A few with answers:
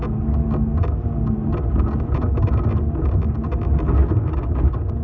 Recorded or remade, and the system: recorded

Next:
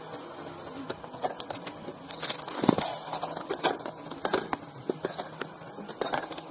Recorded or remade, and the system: recorded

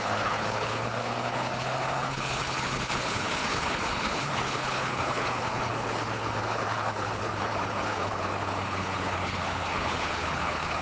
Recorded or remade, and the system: remade, codec, HILCodec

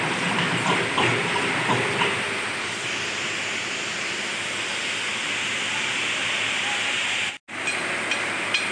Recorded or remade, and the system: recorded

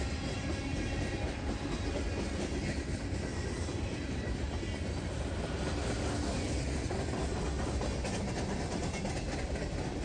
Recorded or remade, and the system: recorded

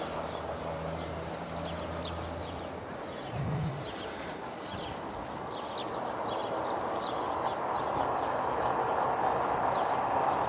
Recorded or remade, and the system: recorded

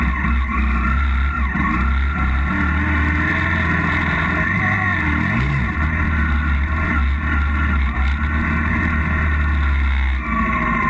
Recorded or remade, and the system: recorded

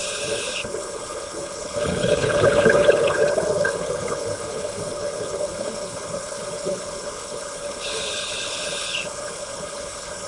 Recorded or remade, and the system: remade, codec, HILCodec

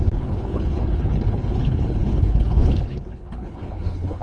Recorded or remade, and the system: remade, codec, HILCodec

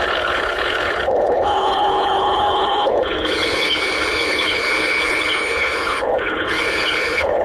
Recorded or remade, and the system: remade, codec, HILCodec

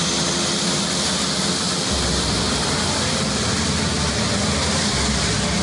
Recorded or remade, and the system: recorded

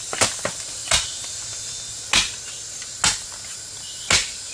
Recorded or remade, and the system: recorded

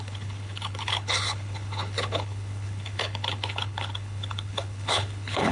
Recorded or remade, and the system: remade, codec, HILCodec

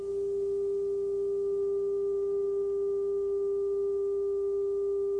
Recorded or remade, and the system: recorded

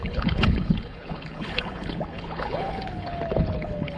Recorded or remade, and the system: remade, codec, HILCodec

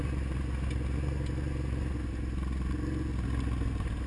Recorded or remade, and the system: recorded